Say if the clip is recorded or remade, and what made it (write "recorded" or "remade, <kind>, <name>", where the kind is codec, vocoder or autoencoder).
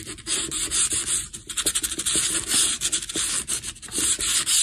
recorded